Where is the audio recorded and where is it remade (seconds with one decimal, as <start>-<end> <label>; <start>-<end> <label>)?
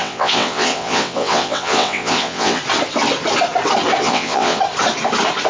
0.0-2.6 remade; 2.6-4.0 recorded; 4.0-4.6 remade; 4.6-5.5 recorded